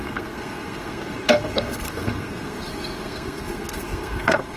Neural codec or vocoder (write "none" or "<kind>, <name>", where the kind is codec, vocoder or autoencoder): codec, SNAC